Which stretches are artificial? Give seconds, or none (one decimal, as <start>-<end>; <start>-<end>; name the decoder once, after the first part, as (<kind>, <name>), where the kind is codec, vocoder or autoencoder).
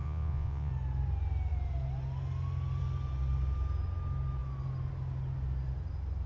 0.0-0.7 (vocoder, Vocos)